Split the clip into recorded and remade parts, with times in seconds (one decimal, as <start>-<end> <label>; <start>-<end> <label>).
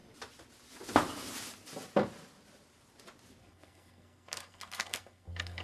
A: 0.0-3.4 recorded; 3.4-5.6 remade